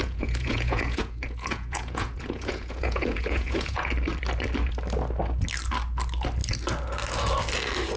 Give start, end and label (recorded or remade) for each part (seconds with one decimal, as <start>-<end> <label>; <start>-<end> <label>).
0.0-3.9 remade; 3.9-8.0 recorded